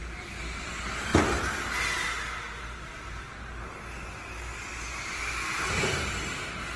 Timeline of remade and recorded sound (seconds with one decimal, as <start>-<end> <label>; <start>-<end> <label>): 0.0-6.8 recorded